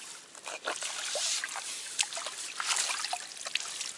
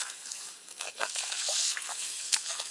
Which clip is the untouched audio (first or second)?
first